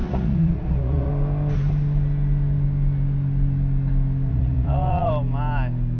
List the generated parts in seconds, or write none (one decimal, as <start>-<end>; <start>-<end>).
0.0-1.1; 4.3-5.1